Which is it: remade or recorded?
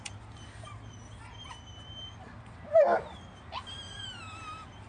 recorded